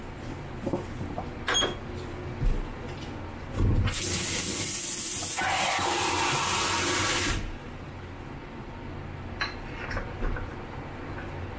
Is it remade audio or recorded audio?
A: recorded